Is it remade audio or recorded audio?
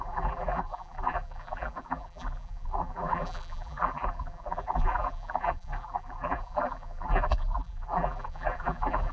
remade